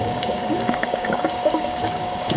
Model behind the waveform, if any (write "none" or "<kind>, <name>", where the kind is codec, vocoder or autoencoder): codec, DAC